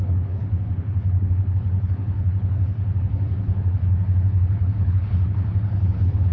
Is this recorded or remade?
remade